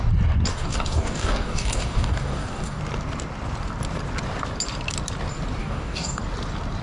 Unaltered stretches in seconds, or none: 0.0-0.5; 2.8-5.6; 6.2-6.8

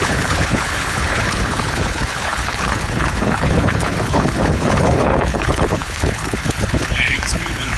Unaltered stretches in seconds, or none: none

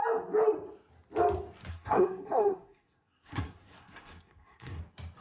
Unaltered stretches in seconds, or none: 0.0-1.7; 4.8-5.2

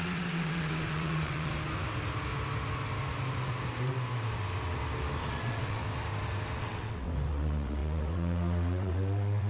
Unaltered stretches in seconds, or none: 1.5-5.2; 5.8-6.6

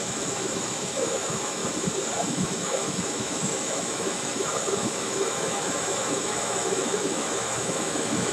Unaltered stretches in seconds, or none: 1.6-2.3

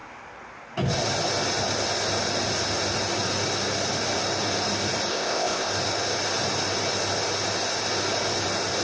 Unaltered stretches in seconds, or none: 0.0-5.1; 5.7-8.8

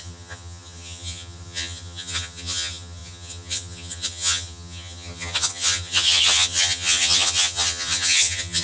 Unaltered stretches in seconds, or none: none

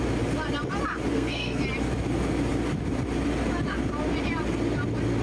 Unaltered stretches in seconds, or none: 0.0-1.1; 1.6-5.2